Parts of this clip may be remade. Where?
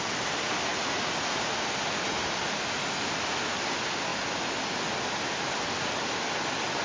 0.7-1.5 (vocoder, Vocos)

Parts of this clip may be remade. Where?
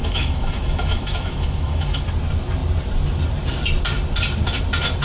0.0-2.1 (autoencoder, DAC-VAE)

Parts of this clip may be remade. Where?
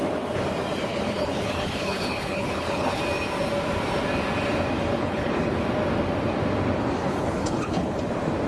0.9-3.0 (codec, HILCodec); 5.0-5.6; 7.0-8.1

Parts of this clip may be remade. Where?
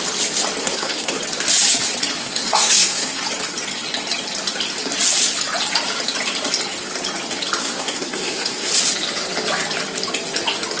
0.6-1.2 (codec, SNAC); 2.2-3.2; 7.6-8.7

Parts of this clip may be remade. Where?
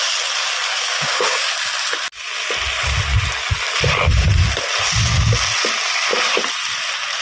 0.7-1.5 (codec, DAC)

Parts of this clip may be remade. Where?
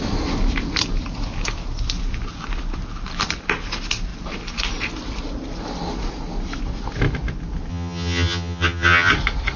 7.7-9.1 (vocoder, HiFi-GAN)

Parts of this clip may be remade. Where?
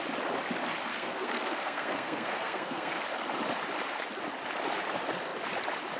0.9-3.0 (codec, SNAC)